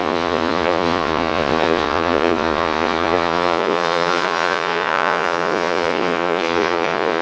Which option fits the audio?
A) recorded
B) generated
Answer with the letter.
B